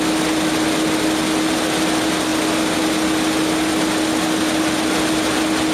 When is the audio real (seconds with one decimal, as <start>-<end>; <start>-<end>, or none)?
0.0-5.7